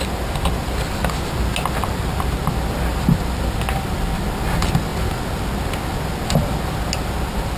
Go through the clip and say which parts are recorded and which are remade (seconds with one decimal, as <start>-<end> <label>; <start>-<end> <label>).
0.0-7.6 recorded